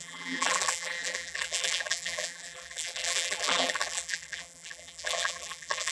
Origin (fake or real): fake